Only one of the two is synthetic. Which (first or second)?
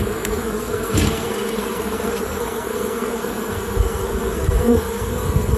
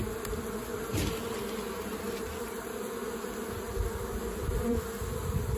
first